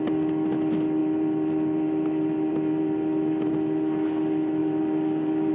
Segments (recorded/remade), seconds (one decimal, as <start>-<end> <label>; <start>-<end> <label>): 0.0-1.0 recorded; 1.0-3.5 remade; 3.5-4.6 recorded; 4.6-5.5 remade